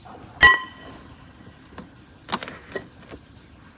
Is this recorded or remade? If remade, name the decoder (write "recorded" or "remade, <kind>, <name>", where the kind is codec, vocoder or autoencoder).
recorded